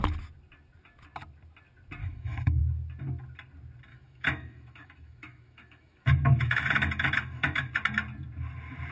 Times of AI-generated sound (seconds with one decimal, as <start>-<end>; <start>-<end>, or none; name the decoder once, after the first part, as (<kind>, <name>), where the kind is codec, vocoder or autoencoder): 2.0-2.6 (autoencoder, DAC-VAE); 3.9-7.7